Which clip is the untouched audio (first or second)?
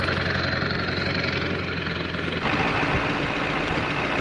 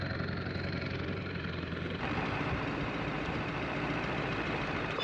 first